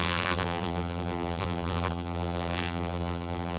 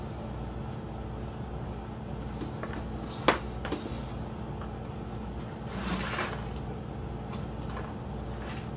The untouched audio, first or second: second